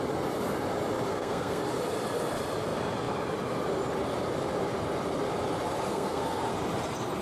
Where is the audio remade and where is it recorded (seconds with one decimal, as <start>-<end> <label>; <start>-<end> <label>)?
0.0-1.1 recorded; 1.1-1.6 remade; 1.6-5.9 recorded; 5.9-6.4 remade; 6.4-7.2 recorded